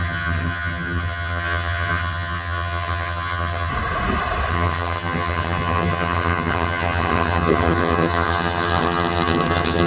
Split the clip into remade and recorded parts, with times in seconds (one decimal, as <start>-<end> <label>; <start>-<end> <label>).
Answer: 0.0-3.7 remade; 3.7-4.5 recorded; 4.5-9.9 remade